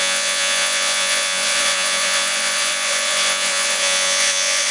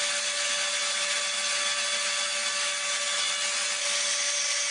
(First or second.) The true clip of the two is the second